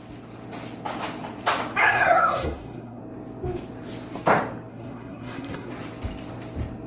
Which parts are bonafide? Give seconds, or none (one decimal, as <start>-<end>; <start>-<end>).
0.0-1.8; 3.0-4.7; 5.7-6.9